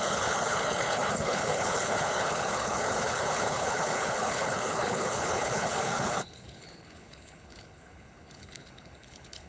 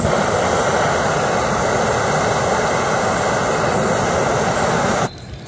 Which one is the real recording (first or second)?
second